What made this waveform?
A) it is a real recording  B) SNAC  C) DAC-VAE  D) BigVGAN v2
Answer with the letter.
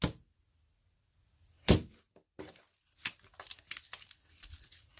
A